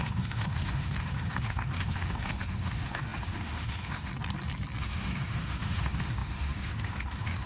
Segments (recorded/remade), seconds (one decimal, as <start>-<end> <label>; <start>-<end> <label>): 0.0-4.1 remade; 4.1-4.8 recorded; 4.8-7.5 remade